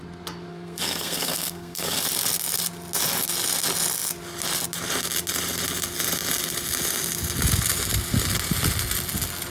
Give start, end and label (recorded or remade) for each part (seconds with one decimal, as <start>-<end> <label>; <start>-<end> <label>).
0.0-0.5 recorded; 0.5-2.0 remade; 2.0-9.5 recorded